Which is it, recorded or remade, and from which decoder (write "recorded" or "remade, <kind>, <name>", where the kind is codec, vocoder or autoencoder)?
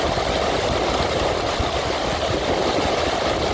recorded